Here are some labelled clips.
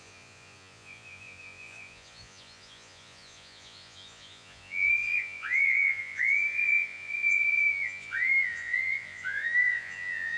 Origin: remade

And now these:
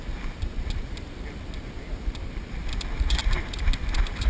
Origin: recorded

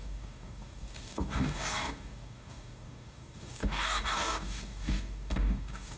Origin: remade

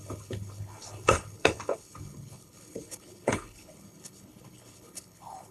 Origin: remade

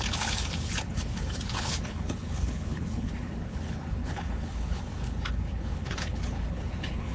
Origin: remade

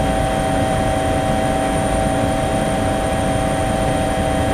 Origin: recorded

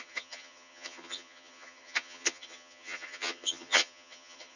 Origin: remade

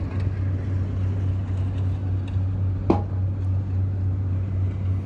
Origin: recorded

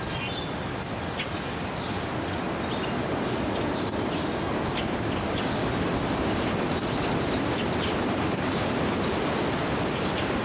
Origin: recorded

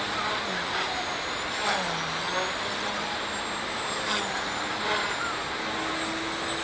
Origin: recorded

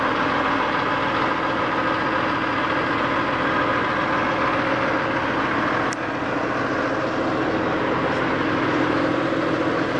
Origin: recorded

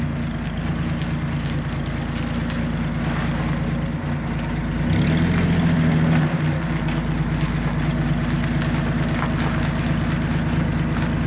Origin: recorded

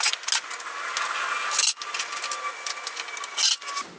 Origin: recorded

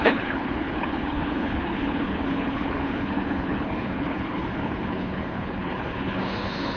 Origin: remade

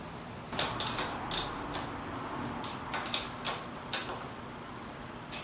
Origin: recorded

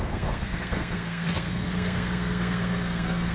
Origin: remade